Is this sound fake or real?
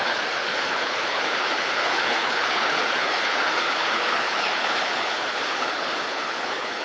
fake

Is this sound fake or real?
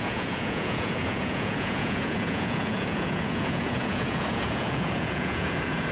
fake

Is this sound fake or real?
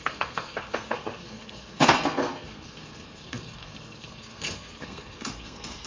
fake